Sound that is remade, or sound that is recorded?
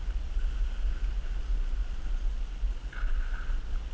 recorded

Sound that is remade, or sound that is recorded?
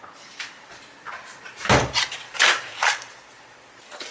recorded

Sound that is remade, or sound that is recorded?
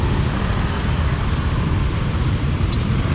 remade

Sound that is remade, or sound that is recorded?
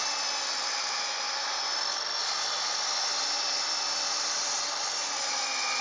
recorded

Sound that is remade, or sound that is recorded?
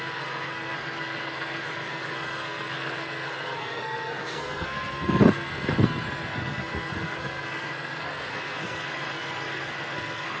remade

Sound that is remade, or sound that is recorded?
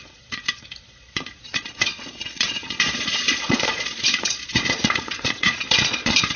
remade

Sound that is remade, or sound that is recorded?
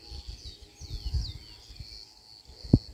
recorded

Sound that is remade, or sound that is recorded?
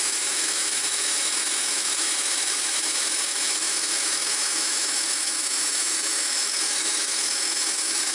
remade